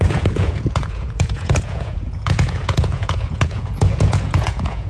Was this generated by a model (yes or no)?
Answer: yes